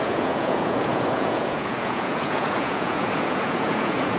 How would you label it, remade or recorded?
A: remade